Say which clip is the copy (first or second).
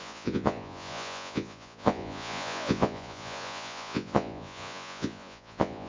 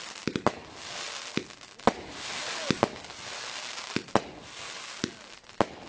first